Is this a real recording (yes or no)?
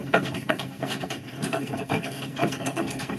no